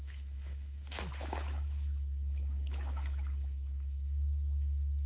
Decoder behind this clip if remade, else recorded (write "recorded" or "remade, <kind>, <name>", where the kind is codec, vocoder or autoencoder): remade, autoencoder, DAC-VAE